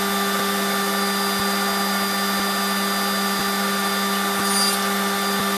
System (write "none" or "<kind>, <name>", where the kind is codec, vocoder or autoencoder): none